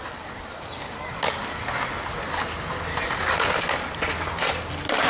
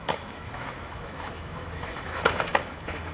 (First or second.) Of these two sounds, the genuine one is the first